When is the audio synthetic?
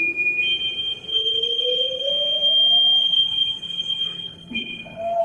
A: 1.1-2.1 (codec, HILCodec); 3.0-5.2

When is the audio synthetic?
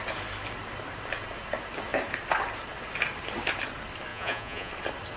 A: 4.1-4.7 (vocoder, Vocos)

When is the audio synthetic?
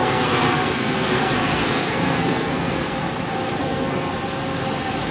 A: 0.0-3.1 (codec, SNAC); 3.6-4.1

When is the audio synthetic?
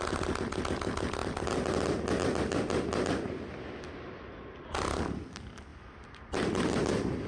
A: none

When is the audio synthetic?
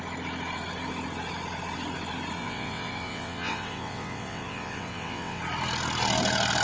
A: 2.4-5.4 (vocoder, WaveNeXt)